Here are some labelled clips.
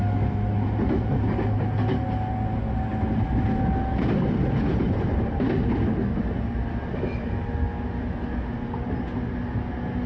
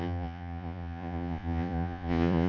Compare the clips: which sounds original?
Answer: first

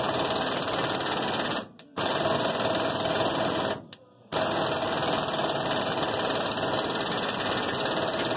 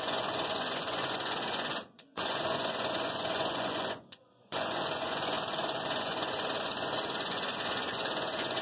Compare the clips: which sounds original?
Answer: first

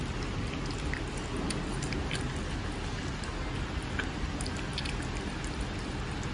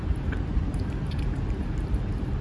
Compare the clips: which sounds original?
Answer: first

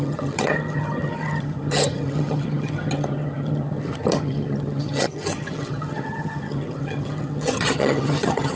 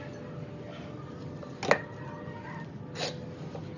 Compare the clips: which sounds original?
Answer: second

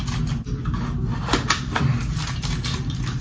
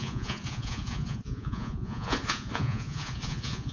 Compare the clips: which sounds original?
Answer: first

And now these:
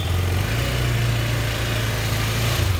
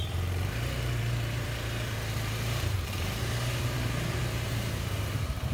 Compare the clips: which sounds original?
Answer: first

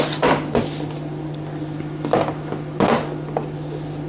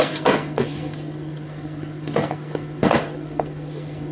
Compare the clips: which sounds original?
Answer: first